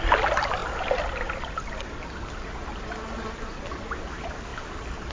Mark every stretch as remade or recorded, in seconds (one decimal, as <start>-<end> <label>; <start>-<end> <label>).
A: 0.0-5.1 recorded